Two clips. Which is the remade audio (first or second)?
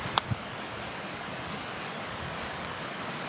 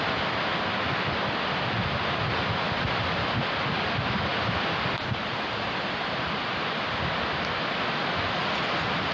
first